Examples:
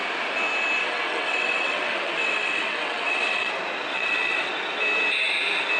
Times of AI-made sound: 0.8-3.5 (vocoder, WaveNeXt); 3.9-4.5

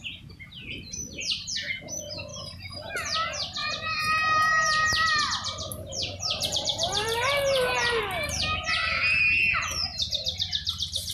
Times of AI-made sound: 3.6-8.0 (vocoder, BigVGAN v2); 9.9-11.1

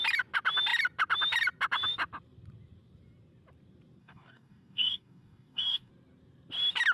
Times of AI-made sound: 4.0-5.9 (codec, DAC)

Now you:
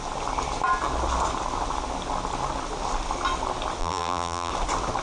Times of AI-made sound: 3.8-4.5 (vocoder, BigVGAN v2)

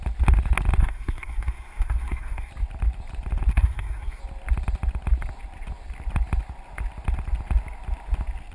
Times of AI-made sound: 0.8-2.5 (codec, SNAC); 3.5-4.2

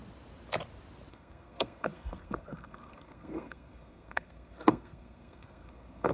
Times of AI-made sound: 1.1-6.1 (codec, SNAC)

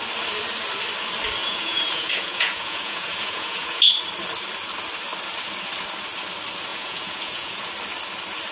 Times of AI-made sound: 1.4-3.8 (vocoder, Vocos); 6.7-7.7